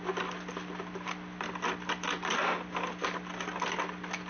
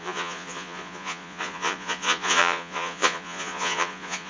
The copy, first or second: second